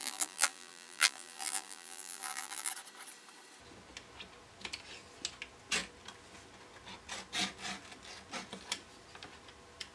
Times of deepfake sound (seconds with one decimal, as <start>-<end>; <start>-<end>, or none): 0.0-2.7